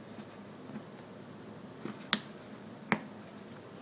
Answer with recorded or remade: recorded